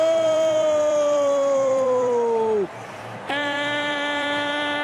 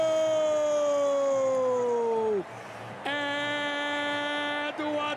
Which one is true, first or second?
second